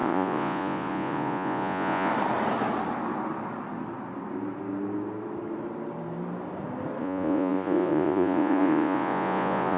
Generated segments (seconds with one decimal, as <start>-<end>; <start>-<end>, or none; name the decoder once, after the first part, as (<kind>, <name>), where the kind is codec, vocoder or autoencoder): 0.0-2.1 (vocoder, Vocos); 7.0-9.8